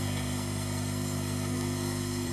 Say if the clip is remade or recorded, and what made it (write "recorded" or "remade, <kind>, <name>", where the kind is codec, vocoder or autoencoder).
remade, codec, SNAC